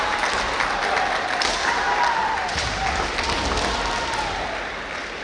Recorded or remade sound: recorded